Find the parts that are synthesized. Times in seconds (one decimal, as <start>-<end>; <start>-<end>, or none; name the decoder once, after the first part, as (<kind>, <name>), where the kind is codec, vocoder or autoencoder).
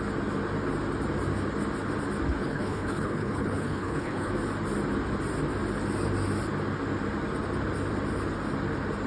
2.4-4.3 (codec, HILCodec)